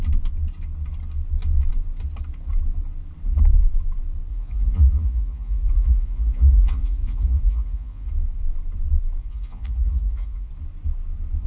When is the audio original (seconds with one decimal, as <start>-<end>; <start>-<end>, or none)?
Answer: 0.0-4.3; 8.1-9.2; 10.5-11.5